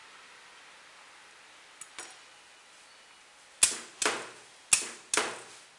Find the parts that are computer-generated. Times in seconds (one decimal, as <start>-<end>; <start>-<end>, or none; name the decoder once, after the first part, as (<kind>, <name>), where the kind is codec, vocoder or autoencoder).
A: none